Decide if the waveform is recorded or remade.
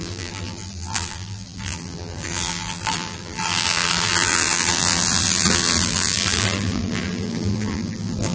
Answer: remade